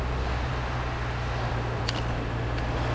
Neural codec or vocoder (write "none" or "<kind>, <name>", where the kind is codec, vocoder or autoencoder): none